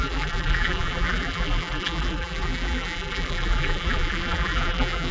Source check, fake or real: fake